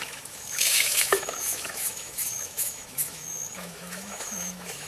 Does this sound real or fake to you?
fake